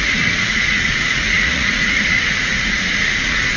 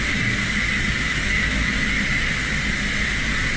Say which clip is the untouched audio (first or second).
second